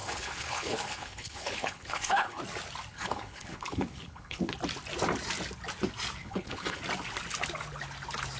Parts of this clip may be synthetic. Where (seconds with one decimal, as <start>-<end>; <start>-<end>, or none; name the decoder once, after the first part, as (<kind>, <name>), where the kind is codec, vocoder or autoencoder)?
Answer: 0.0-2.4 (codec, HILCodec); 2.9-4.5; 6.2-6.8